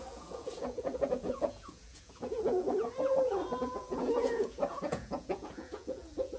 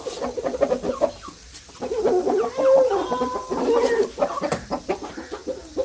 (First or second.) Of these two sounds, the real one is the second